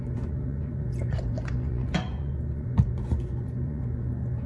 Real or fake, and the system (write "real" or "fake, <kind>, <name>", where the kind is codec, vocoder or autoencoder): fake, vocoder, Vocos